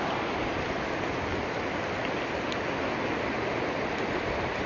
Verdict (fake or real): real